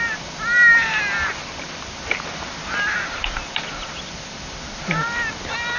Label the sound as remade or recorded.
recorded